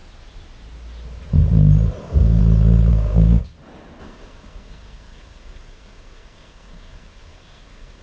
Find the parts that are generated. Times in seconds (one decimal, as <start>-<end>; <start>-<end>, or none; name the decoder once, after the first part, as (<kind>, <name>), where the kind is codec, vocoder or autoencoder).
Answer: 2.0-2.4 (codec, SNAC); 2.9-3.4; 4.0-8.0